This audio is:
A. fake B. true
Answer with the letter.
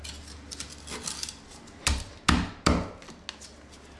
B